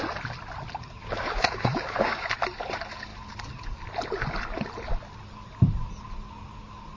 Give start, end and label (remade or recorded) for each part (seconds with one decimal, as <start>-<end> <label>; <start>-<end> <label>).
0.0-1.0 recorded; 1.0-2.3 remade; 2.3-7.0 recorded